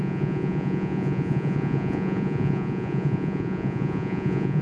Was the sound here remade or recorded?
remade